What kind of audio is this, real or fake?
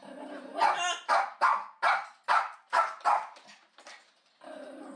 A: real